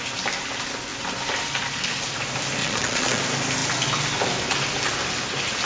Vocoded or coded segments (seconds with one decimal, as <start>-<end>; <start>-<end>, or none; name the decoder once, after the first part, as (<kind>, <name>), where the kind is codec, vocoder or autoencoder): 2.6-3.2 (vocoder, Vocos)

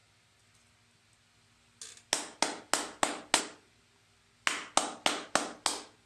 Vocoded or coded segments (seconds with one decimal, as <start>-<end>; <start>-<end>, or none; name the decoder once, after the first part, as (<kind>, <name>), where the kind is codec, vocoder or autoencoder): none

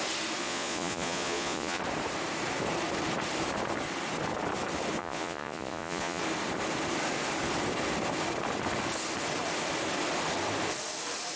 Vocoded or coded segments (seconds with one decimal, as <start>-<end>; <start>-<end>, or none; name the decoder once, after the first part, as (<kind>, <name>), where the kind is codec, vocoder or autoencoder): 0.4-1.8 (vocoder, Vocos); 5.0-6.2

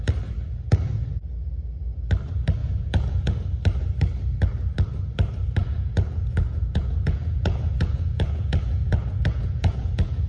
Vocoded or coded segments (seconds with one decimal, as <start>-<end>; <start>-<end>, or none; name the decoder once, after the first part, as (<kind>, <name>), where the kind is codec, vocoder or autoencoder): 2.6-3.4 (vocoder, Vocos); 5.6-10.3

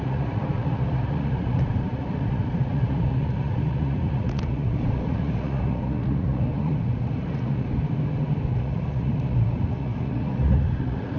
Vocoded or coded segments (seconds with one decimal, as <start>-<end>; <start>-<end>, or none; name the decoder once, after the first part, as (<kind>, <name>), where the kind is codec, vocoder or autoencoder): 0.0-7.7 (vocoder, Vocos); 8.5-11.2

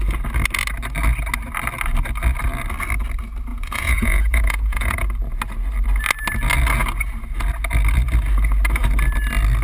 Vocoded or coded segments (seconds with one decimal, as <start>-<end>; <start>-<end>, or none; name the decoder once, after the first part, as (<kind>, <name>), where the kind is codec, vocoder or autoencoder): 3.5-5.0 (vocoder, Vocos)